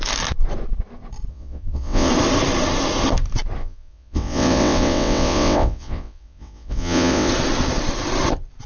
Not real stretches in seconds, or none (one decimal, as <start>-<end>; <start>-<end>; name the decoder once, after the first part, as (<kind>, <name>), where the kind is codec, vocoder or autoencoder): 1.3-2.1 (vocoder, WaveNeXt); 3.6-7.3